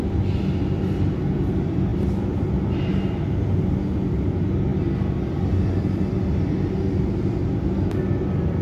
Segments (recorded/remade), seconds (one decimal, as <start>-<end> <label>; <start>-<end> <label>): 0.0-8.6 recorded